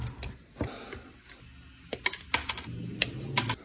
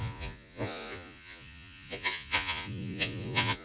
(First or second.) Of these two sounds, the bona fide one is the first